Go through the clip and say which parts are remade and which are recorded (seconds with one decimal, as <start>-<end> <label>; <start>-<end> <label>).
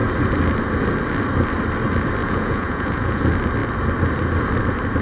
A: 0.0-2.2 recorded; 2.2-3.2 remade; 3.2-5.0 recorded